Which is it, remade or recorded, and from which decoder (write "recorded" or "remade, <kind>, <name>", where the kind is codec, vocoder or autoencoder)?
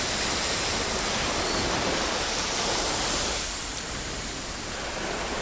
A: recorded